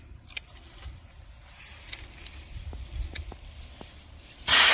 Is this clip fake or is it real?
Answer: real